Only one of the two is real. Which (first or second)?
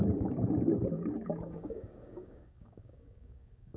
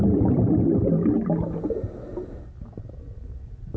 second